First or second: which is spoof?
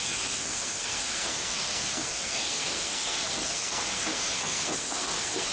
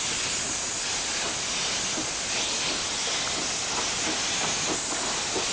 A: first